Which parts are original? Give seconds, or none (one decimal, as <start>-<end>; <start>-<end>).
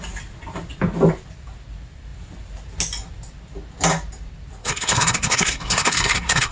0.0-4.6